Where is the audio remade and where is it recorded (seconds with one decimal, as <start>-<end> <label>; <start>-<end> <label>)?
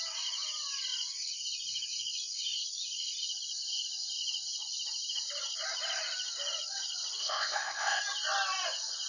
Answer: 0.0-7.2 recorded; 7.2-8.0 remade; 8.0-9.1 recorded